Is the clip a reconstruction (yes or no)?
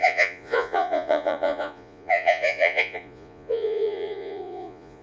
yes